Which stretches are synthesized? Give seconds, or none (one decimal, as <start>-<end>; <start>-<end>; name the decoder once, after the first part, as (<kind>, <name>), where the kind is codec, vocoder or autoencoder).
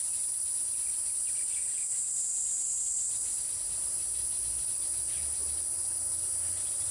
0.0-5.4 (vocoder, BigVGAN v2); 6.5-6.9